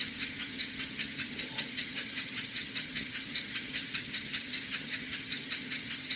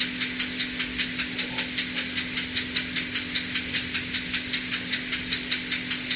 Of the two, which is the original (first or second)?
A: second